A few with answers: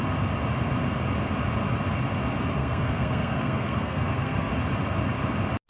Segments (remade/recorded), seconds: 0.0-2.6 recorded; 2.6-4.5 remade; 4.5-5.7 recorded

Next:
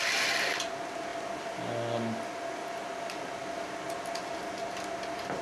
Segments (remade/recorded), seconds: 0.0-5.4 recorded

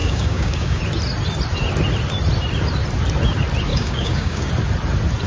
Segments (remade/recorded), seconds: 0.0-0.8 remade; 0.8-3.7 recorded; 3.7-4.5 remade; 4.5-5.3 recorded

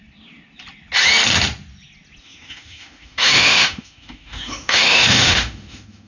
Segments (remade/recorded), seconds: 0.0-2.2 recorded; 2.2-6.1 remade

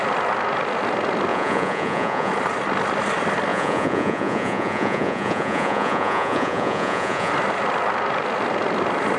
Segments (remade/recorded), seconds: 0.0-1.3 recorded; 1.3-2.3 remade; 2.3-3.5 recorded; 3.5-7.3 remade; 7.3-9.2 recorded

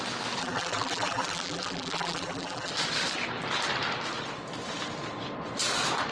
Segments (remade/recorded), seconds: 0.0-0.4 recorded; 0.4-2.7 remade; 2.7-6.1 recorded

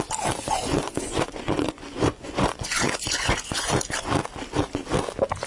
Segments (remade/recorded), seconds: 0.0-0.4 recorded; 0.4-3.7 remade; 3.7-5.5 recorded

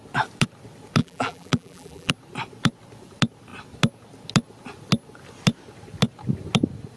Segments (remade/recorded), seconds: 0.0-1.0 recorded; 1.0-2.1 remade; 2.1-7.0 recorded